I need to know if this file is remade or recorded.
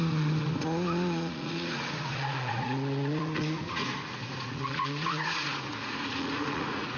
remade